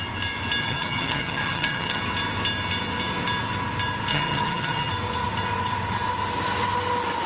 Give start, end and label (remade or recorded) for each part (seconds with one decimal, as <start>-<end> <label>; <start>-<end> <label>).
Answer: 0.0-0.6 recorded; 0.6-2.0 remade; 2.0-4.1 recorded; 4.1-4.9 remade; 4.9-7.3 recorded

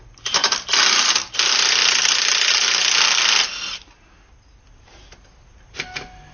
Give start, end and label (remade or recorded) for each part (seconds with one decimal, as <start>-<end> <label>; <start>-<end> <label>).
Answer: 0.0-6.3 recorded

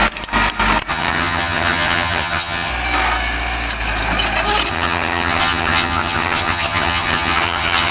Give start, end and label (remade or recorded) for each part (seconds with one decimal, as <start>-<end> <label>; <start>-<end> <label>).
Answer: 0.0-0.9 recorded; 0.9-2.7 remade; 2.7-4.7 recorded; 4.7-7.9 remade